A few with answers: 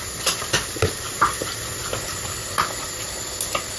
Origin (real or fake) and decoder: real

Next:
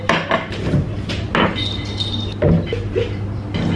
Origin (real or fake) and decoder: real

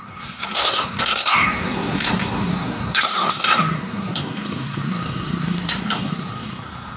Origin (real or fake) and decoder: fake, codec, SNAC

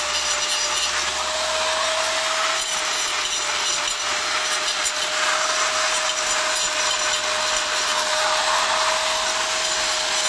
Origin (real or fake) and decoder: real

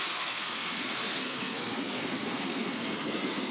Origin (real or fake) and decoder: fake, codec, SNAC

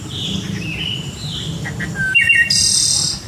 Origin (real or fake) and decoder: real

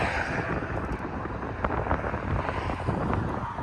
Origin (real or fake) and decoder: real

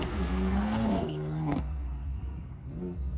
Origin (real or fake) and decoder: fake, codec, SNAC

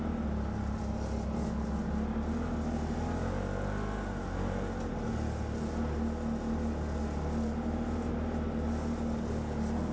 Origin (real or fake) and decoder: real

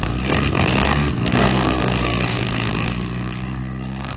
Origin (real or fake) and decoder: fake, codec, SNAC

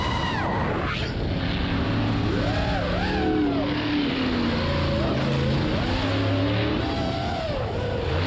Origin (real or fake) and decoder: real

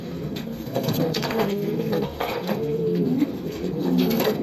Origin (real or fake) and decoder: fake, codec, SNAC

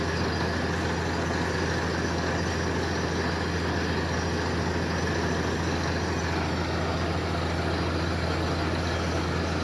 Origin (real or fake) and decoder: real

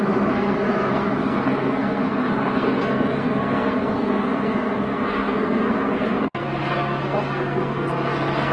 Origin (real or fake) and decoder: fake, codec, SNAC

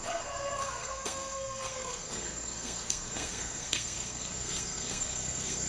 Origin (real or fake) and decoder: fake, codec, SNAC